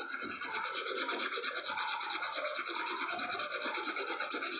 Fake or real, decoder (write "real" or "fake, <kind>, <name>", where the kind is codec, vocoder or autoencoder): real